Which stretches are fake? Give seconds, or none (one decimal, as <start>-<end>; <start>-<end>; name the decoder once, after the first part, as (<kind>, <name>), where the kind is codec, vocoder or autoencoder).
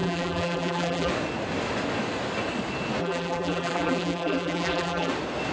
0.0-1.1 (vocoder, BigVGAN v2); 3.0-5.1